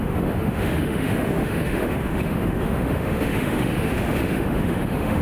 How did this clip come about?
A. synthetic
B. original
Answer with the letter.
A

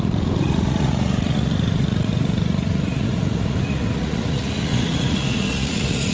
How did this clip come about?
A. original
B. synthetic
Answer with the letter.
B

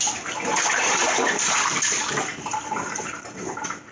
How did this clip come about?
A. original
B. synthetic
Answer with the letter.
B